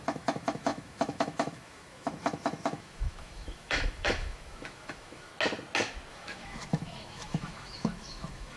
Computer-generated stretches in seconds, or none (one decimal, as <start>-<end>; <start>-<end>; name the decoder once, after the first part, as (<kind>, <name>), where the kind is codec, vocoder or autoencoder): 0.0-5.3 (autoencoder, DAC-VAE); 6.1-8.6